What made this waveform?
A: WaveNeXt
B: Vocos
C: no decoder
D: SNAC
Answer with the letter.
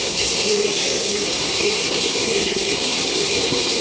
D